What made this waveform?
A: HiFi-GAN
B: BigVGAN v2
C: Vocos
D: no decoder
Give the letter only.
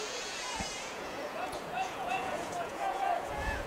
C